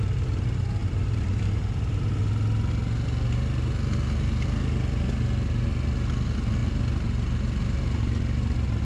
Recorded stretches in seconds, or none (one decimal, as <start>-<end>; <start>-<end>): 0.0-0.8; 2.0-8.8